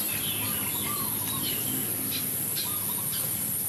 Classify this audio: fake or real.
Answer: real